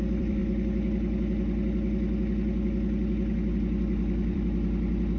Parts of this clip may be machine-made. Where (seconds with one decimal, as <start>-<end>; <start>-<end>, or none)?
0.0-0.4; 3.5-5.2